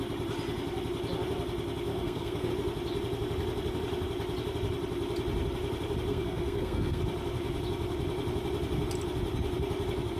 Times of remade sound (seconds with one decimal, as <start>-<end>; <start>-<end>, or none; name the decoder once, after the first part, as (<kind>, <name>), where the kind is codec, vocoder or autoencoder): 1.9-2.5 (codec, SNAC); 6.1-7.0